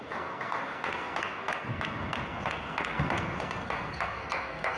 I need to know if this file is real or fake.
fake